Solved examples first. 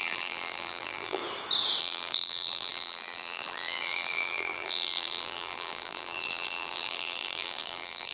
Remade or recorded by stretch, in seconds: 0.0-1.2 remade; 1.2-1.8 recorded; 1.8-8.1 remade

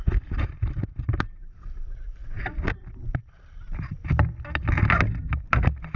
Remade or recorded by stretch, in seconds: 0.0-2.2 remade; 2.2-5.3 recorded; 5.3-6.0 remade

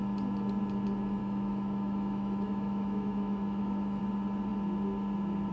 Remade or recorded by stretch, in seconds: 0.0-1.2 recorded; 1.2-4.0 remade; 4.0-5.5 recorded

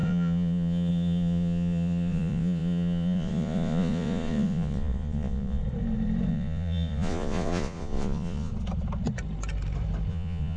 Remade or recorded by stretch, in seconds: 0.0-5.6 remade; 5.6-6.3 recorded; 6.3-8.5 remade; 8.5-10.1 recorded; 10.1-10.6 remade

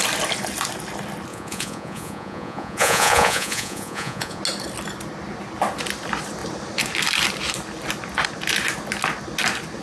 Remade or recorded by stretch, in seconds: 0.0-1.3 recorded; 1.3-4.4 remade; 4.4-9.8 recorded

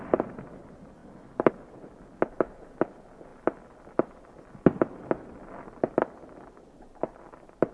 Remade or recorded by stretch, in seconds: 0.0-1.0 recorded; 1.0-1.5 remade; 1.5-3.3 recorded; 3.3-6.8 remade; 6.8-7.7 recorded